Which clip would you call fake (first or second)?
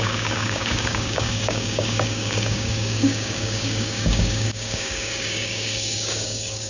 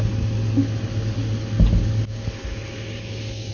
first